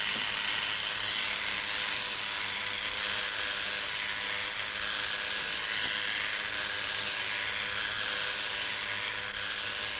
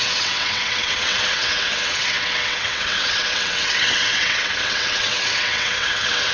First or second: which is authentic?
first